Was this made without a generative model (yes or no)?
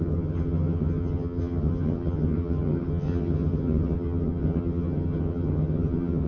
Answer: no